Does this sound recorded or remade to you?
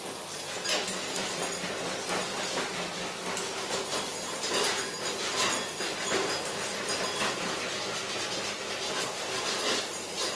recorded